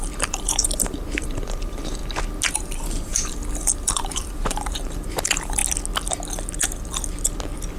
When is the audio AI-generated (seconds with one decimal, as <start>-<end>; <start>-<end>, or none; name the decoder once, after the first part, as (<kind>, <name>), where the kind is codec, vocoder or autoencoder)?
0.0-2.0 (vocoder, BigVGAN v2); 2.5-5.6